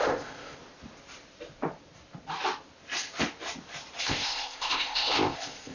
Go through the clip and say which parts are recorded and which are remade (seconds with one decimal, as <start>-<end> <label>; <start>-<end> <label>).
0.0-0.6 remade; 0.6-4.0 recorded; 4.0-5.7 remade